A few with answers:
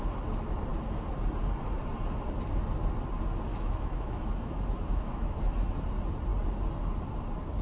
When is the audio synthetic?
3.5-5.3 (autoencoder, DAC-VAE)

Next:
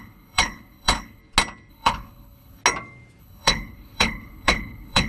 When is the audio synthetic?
0.0-1.2 (codec, HILCodec); 1.7-2.6; 3.2-5.1

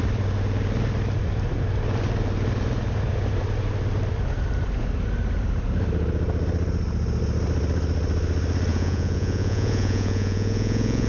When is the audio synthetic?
8.7-11.1 (vocoder, Vocos)

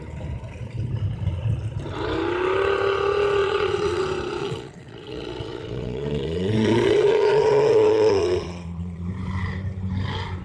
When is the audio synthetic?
3.4-4.0 (vocoder, Vocos); 4.4-9.1

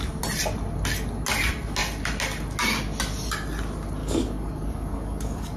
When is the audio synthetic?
4.0-5.6 (codec, DAC)

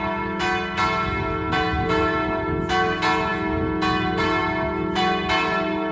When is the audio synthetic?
none